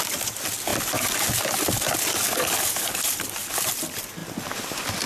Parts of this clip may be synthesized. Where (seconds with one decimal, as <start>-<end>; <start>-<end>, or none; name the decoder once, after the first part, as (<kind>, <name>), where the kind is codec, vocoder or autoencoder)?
0.7-3.8 (vocoder, BigVGAN v2); 4.2-5.1